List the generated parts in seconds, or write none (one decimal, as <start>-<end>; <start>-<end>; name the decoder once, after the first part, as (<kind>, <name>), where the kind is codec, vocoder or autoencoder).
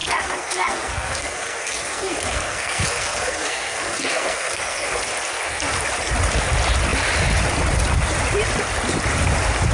0.0-5.0 (codec, SNAC)